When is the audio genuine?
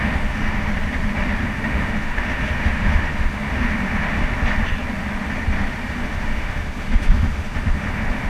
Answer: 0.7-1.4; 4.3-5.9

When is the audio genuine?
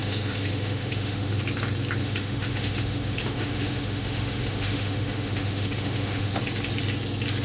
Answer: 1.4-2.0; 6.4-7.4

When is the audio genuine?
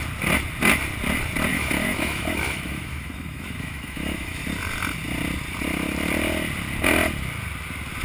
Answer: 0.0-1.5; 4.4-8.0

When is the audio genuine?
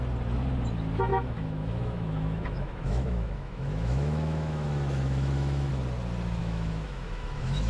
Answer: 0.0-1.1; 5.7-6.4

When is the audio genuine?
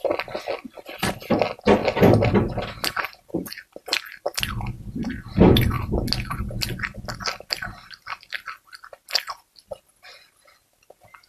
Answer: 0.0-11.3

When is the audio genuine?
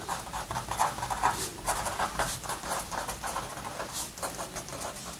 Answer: 0.0-5.2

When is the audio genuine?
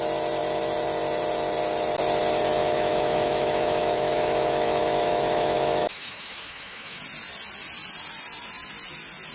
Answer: 0.0-2.6; 7.0-9.3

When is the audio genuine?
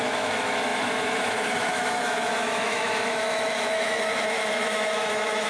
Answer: none